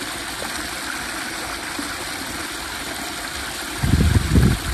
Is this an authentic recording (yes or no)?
yes